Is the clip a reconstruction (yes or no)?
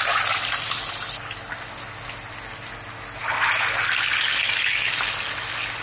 no